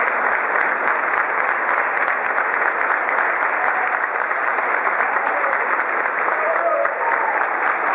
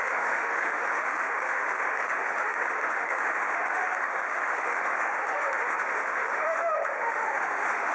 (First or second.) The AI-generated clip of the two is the second